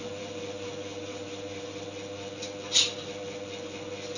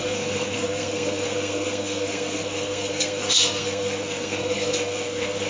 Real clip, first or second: first